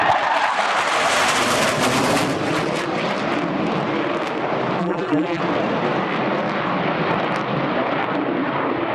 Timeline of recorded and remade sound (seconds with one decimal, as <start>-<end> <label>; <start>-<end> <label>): 0.0-4.8 recorded; 4.8-5.4 remade; 5.4-8.9 recorded